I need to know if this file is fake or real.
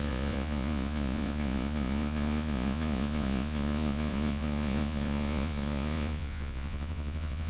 fake